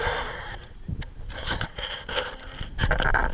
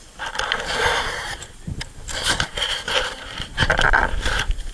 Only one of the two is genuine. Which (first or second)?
first